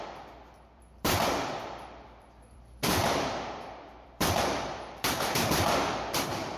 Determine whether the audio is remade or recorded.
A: remade